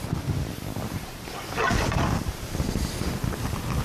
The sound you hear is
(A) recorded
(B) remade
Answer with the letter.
A